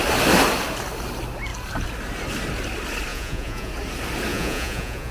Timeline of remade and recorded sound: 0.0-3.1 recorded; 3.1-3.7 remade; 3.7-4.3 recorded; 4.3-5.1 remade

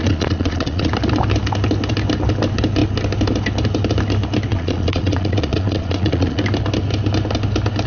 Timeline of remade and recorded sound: 0.0-0.9 remade; 0.9-4.5 recorded; 4.5-6.4 remade; 6.4-7.9 recorded

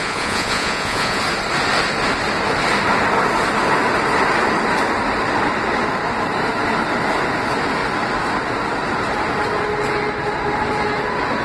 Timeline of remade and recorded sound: 0.0-1.2 remade; 1.2-11.4 recorded

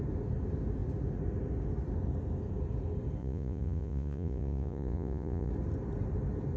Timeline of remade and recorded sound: 0.0-3.2 recorded; 3.2-5.5 remade; 5.5-6.6 recorded

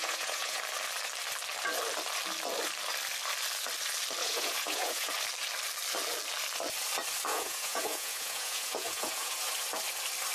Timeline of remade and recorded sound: 0.0-0.6 remade; 0.6-4.2 recorded; 4.2-5.1 remade; 5.1-7.3 recorded; 7.3-9.4 remade; 9.4-10.3 recorded

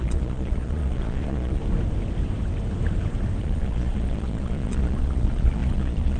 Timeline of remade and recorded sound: 0.0-1.6 remade; 1.6-3.4 recorded; 3.4-6.2 remade

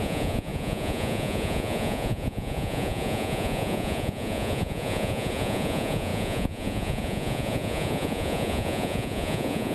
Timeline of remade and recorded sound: 0.0-9.7 remade